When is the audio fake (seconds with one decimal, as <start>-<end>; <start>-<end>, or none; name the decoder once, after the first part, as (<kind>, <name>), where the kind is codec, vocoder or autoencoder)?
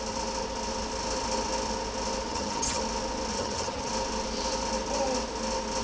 2.3-2.8 (vocoder, HiFi-GAN); 3.3-3.9